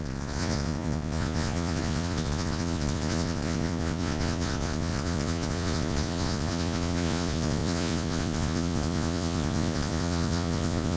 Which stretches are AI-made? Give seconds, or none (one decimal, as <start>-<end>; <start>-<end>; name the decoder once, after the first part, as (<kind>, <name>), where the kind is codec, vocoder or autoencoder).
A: 0.0-11.0 (vocoder, Vocos)